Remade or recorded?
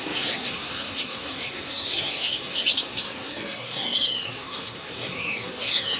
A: remade